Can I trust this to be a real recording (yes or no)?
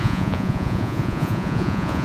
no